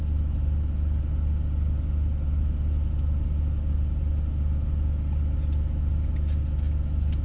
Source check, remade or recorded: recorded